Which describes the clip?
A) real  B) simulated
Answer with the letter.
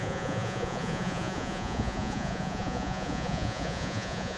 B